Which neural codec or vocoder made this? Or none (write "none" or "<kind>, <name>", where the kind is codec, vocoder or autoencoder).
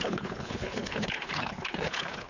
codec, HILCodec